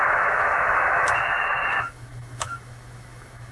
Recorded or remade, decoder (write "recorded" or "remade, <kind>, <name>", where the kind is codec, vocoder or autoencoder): remade, autoencoder, DAC-VAE